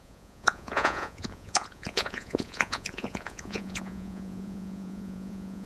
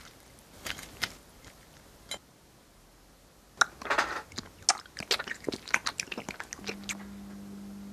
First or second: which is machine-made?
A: first